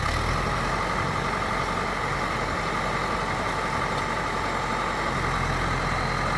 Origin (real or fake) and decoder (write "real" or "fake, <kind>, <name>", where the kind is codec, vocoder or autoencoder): real